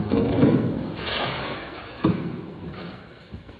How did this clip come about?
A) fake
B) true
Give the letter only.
A